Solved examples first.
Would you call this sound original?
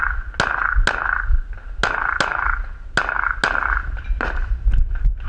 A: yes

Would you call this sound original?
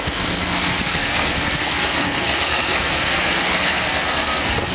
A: no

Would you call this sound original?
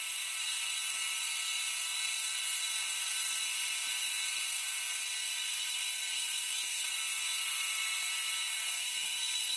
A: no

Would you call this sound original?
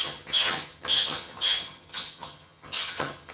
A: no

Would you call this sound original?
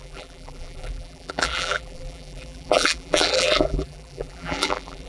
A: no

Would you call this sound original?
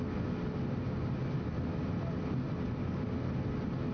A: yes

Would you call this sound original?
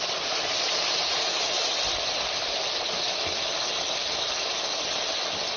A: yes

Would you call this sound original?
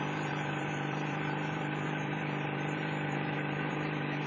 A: no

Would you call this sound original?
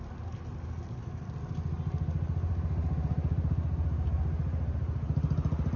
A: yes